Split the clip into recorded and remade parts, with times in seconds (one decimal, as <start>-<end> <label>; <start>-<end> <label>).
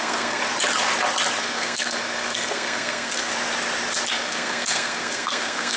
0.0-0.4 remade; 0.4-1.4 recorded; 1.4-3.3 remade; 3.3-4.1 recorded; 4.1-5.8 remade